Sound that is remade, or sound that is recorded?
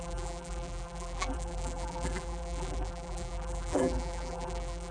remade